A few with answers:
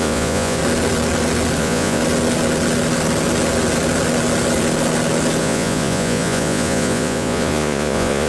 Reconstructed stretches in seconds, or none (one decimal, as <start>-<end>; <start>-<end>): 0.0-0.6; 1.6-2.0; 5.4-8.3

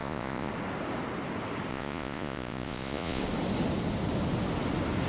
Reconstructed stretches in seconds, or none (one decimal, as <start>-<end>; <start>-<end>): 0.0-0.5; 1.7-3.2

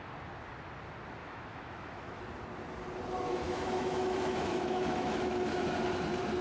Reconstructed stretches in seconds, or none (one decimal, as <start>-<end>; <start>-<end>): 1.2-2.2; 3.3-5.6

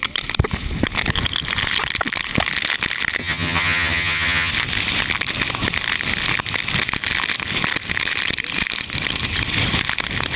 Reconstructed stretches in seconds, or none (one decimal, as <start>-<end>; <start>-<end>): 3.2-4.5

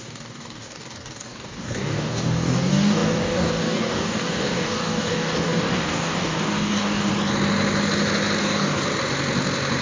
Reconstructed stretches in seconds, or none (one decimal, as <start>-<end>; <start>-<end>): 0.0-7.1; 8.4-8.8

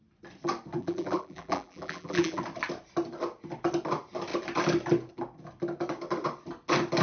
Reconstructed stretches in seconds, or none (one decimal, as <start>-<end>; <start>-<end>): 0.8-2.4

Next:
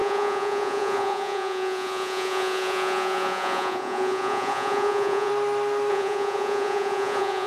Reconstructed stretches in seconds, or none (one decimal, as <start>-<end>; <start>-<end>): 0.0-5.3; 5.9-7.5